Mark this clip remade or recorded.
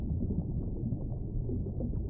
recorded